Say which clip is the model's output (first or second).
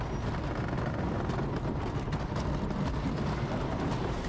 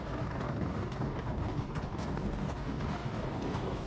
second